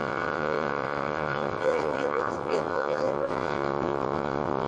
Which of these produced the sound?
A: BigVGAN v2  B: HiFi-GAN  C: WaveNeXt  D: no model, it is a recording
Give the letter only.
C